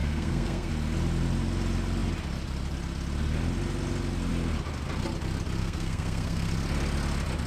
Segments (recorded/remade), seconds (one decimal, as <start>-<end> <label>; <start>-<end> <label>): 0.0-0.7 remade; 0.7-5.6 recorded; 5.6-6.5 remade; 6.5-7.5 recorded